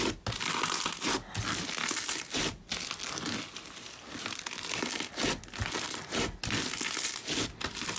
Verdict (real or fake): real